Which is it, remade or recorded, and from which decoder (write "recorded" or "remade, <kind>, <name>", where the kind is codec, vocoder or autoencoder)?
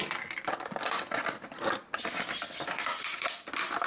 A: recorded